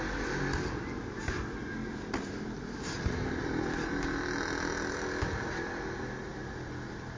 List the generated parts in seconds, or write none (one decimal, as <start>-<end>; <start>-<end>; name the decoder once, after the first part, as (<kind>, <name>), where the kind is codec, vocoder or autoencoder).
none